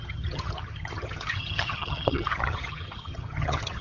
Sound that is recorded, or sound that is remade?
remade